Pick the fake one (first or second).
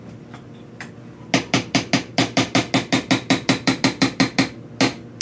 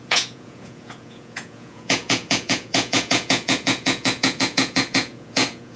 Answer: second